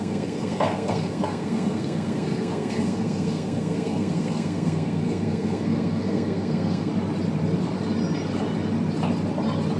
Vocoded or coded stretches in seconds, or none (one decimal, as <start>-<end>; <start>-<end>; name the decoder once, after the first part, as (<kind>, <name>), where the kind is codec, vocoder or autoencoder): 0.0-6.9 (codec, SNAC)